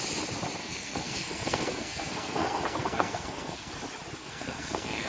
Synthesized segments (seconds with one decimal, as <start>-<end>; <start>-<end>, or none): 0.6-3.7; 4.2-5.1